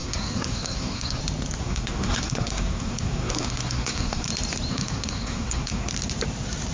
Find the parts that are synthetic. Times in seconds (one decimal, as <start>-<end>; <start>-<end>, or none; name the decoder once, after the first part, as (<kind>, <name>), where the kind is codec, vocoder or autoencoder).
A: 0.0-1.2 (codec, SNAC); 1.6-4.3; 4.7-5.9